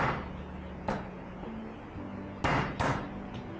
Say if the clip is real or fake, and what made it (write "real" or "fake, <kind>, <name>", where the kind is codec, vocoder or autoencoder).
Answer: real